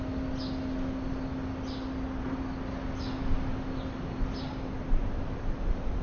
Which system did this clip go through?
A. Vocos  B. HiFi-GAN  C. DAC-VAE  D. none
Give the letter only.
D